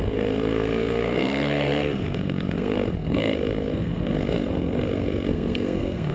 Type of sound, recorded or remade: remade